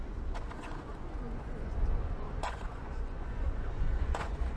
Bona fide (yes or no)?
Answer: no